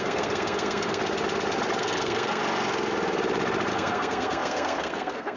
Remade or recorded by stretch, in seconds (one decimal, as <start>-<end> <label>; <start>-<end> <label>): 0.0-1.0 remade; 1.0-1.8 recorded; 1.8-2.4 remade; 2.4-3.7 recorded; 3.7-5.4 remade